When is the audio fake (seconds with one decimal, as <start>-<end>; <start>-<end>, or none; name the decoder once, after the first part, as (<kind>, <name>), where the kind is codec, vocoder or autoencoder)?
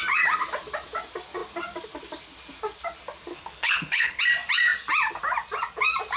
3.3-4.2 (codec, HILCodec)